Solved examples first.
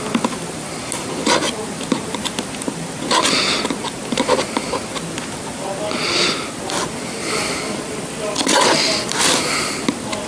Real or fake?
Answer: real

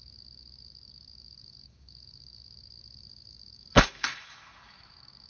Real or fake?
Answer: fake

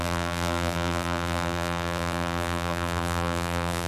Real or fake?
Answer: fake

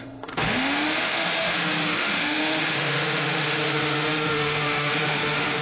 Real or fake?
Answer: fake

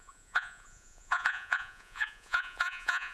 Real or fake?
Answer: fake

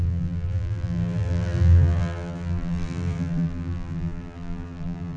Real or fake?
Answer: fake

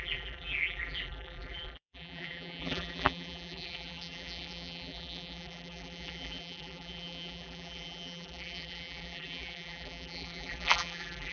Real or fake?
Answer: fake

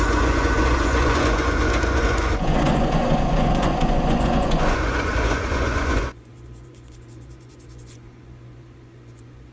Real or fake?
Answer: fake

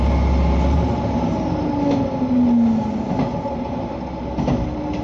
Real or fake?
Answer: real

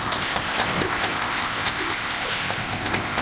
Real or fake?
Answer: fake